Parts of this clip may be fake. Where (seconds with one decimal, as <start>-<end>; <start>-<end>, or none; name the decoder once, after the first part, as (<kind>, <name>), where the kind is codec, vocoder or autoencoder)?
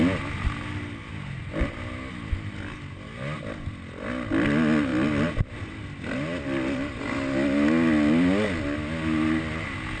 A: none